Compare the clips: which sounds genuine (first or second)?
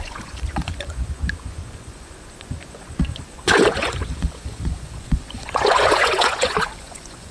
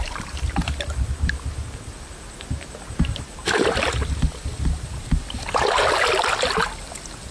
second